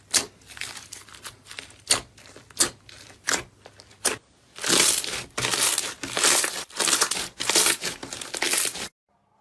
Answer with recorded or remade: recorded